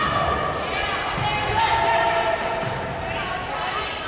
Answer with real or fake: real